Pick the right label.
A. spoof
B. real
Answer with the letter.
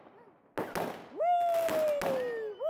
B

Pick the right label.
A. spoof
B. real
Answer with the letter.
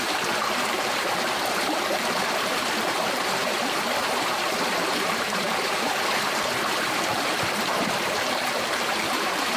A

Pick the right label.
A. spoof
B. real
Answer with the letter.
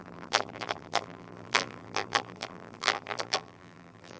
A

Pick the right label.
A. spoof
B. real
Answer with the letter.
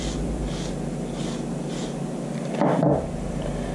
B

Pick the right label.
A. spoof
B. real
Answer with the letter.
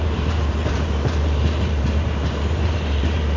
A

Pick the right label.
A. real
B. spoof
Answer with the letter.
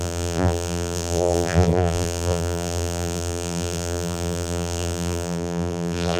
B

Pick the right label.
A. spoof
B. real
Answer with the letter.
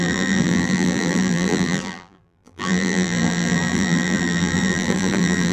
A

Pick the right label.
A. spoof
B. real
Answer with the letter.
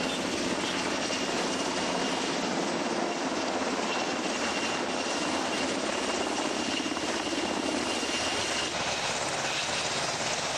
B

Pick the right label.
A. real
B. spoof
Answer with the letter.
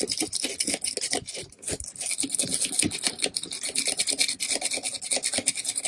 A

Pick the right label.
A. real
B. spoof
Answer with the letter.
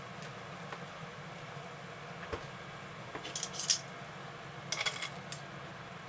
A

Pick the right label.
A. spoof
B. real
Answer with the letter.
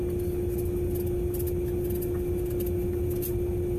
B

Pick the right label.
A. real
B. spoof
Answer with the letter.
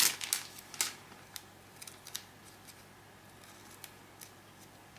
A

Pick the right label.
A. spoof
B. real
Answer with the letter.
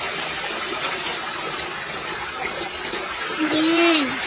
B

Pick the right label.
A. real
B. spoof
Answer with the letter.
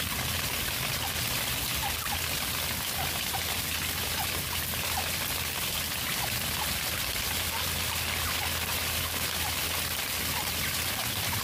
A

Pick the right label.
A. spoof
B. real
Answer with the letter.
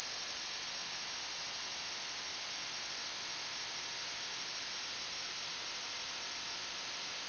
B